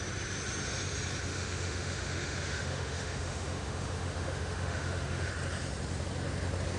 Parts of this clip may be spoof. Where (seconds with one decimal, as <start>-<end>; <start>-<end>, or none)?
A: 1.3-5.3